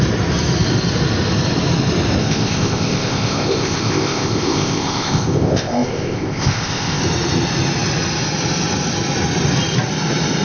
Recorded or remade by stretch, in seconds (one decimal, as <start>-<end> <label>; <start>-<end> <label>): 0.0-2.2 recorded; 2.2-7.0 remade; 7.0-10.4 recorded